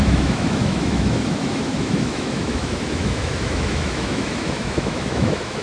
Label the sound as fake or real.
fake